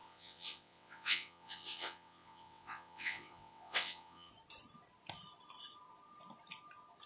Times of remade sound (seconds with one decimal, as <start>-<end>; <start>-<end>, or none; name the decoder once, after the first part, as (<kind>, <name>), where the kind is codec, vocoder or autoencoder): 0.0-4.3 (vocoder, WaveNeXt)